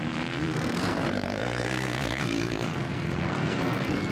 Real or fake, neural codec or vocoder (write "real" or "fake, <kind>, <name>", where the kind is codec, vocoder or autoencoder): fake, codec, SNAC